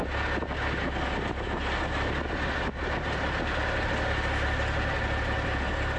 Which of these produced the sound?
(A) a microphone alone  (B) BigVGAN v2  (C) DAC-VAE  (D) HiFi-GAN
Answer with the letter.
A